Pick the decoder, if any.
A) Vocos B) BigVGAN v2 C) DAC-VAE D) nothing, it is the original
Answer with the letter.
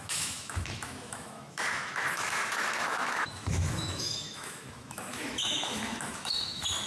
C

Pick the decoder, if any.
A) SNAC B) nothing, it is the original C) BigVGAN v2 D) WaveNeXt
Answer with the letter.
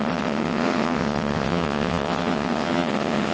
D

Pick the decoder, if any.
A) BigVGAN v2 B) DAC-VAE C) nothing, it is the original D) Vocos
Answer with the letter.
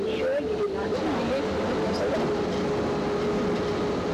C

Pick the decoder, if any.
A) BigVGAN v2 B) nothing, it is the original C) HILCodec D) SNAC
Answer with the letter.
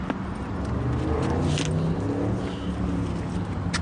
B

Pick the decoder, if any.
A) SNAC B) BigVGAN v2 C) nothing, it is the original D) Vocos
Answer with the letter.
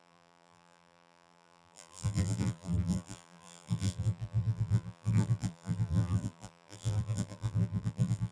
B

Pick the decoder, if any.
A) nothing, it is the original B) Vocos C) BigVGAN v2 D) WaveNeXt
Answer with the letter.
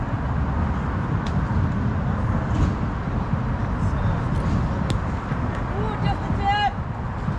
A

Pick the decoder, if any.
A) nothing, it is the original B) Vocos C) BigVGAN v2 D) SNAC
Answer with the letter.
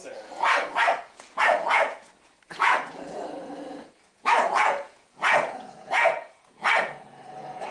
B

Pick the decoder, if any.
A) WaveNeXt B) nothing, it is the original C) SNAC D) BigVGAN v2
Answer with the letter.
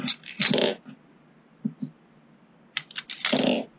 B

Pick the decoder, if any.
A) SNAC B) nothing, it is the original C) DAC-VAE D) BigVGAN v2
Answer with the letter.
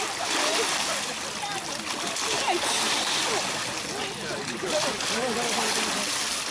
B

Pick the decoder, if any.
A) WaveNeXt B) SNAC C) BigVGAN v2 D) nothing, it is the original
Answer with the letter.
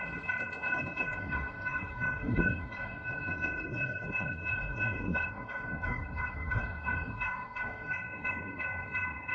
B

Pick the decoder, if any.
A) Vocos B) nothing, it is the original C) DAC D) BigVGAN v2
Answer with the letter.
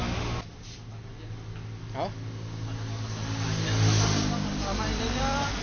B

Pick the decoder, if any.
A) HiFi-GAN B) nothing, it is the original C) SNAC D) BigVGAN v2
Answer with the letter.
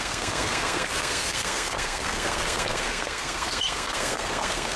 C